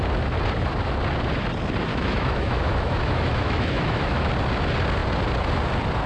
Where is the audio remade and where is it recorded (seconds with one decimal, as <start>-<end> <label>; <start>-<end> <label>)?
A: 0.0-1.9 recorded; 1.9-4.3 remade; 4.3-6.1 recorded